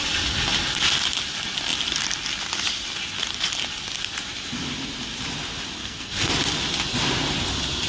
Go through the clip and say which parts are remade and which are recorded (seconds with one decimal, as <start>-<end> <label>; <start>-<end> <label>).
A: 0.0-5.8 recorded; 5.8-6.3 remade; 6.3-7.9 recorded